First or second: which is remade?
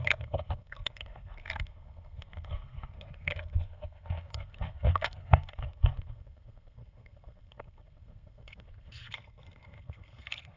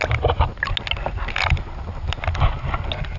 first